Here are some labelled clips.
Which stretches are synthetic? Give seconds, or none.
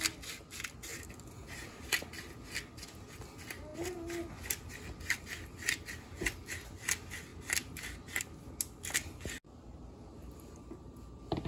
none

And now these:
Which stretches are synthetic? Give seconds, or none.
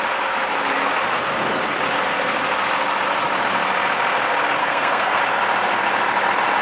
4.6-5.2 (codec, SNAC)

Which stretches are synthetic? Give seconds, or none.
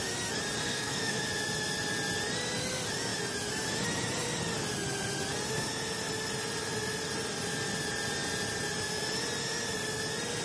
0.6-1.2 (codec, SNAC)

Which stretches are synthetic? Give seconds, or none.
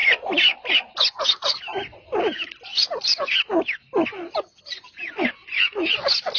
none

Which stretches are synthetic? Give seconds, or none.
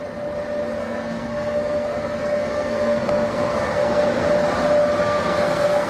0.8-4.3 (codec, SNAC); 5.0-5.9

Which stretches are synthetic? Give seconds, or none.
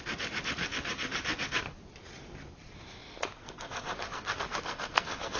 3.4-5.4 (codec, SNAC)